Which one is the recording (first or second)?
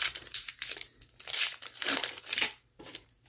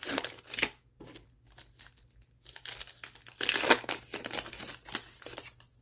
second